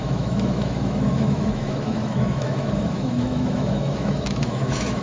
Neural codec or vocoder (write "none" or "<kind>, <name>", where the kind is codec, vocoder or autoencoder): autoencoder, DAC-VAE